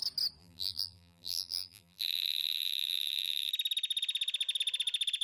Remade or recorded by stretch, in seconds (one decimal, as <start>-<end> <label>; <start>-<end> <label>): 0.0-0.4 recorded; 0.4-3.5 remade; 3.5-5.2 recorded